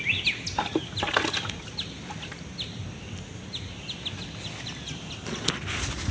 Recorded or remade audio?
recorded